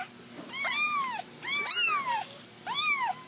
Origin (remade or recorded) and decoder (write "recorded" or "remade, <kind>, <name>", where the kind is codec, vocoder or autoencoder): recorded